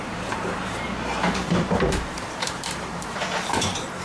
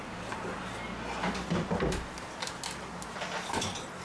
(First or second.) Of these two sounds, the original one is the second